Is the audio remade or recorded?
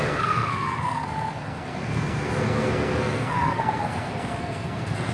remade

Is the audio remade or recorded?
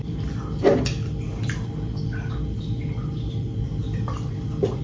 recorded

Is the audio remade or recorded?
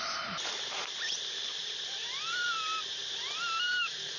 remade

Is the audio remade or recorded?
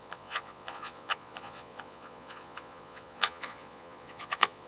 remade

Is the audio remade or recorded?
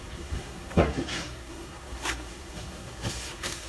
remade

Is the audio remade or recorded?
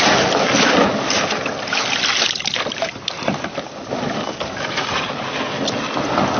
recorded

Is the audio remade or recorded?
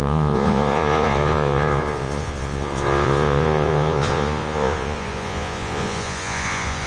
remade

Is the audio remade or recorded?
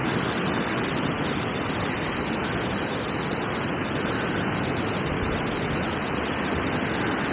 recorded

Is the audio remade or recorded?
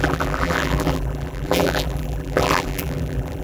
remade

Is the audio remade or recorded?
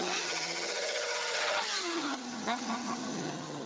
remade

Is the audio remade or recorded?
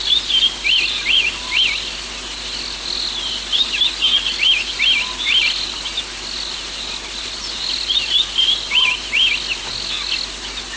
recorded